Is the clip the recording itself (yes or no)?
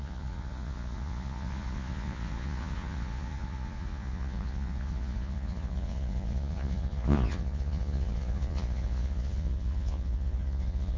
no